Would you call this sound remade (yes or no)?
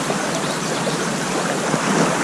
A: no